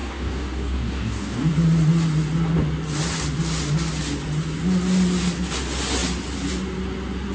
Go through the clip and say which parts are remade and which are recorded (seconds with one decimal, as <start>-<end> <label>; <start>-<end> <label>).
0.0-1.5 remade; 1.5-7.3 recorded